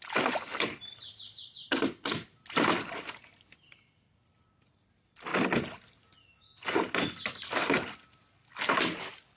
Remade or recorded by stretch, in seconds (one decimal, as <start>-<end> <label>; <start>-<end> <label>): 0.0-0.5 remade; 0.5-1.1 recorded; 1.1-5.3 remade; 5.3-8.0 recorded; 8.0-9.4 remade

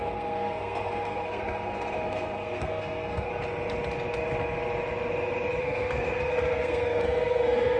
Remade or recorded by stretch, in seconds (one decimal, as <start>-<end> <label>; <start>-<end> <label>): 0.0-3.3 remade; 3.3-5.6 recorded; 5.6-7.8 remade

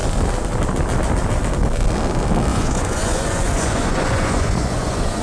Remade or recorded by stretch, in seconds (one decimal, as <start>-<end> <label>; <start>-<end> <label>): 0.0-2.5 recorded; 2.5-5.2 remade

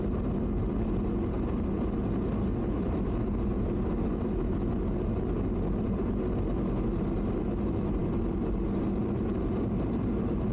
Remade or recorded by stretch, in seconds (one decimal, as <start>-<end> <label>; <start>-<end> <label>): 0.0-10.5 recorded

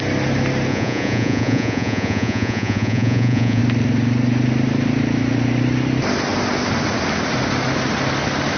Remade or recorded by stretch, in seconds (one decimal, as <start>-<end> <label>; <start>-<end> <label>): 0.0-0.7 recorded; 0.7-3.6 remade; 3.6-8.6 recorded

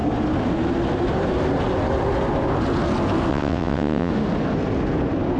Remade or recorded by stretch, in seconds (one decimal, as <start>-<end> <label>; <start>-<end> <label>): 0.0-3.3 recorded; 3.3-4.1 remade; 4.1-5.4 recorded

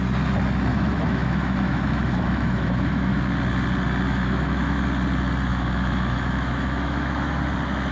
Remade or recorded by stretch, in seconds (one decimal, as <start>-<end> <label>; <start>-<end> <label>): 0.0-0.7 recorded; 0.7-3.2 remade; 3.2-4.1 recorded; 4.1-4.8 remade; 4.8-5.5 recorded; 5.5-7.4 remade; 7.4-7.9 recorded

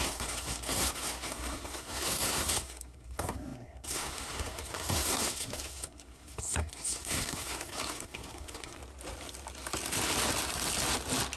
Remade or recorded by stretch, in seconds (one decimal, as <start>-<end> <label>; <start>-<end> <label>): 0.0-8.8 remade; 8.8-11.4 recorded